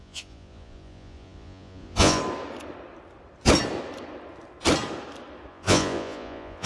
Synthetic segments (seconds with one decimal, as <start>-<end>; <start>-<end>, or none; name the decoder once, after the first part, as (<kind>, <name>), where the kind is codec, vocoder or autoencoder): 0.0-2.2 (vocoder, Vocos); 5.5-6.7